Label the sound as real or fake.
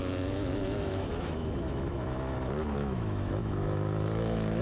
fake